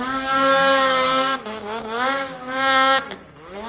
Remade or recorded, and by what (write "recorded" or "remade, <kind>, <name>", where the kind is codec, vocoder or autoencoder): remade, codec, DAC